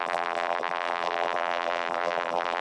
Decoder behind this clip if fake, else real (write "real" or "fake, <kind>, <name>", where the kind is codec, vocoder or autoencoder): fake, vocoder, BigVGAN v2